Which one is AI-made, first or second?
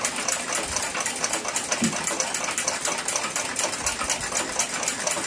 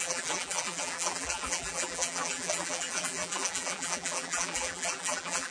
second